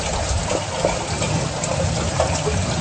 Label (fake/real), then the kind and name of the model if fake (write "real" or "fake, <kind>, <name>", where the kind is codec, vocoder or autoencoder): fake, vocoder, BigVGAN v2